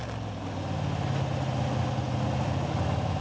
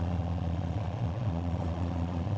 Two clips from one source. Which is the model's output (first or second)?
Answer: second